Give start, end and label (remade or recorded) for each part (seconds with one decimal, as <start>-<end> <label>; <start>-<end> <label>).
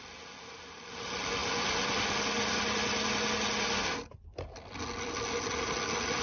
0.0-6.2 recorded